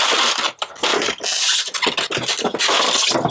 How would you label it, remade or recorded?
recorded